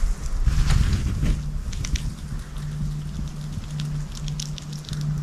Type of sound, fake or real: real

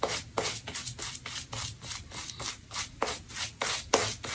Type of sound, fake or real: real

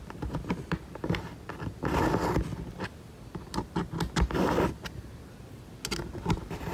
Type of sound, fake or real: real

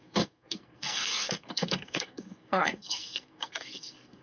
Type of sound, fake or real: fake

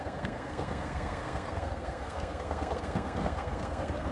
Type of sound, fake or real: fake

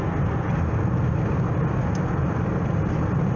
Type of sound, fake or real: real